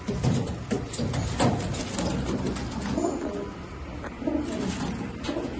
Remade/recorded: recorded